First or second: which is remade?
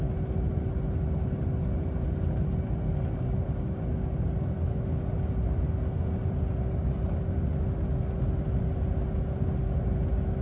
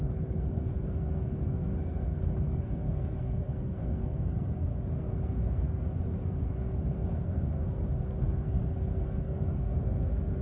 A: second